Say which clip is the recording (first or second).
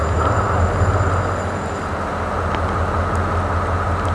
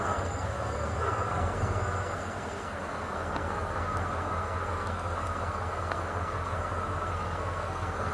first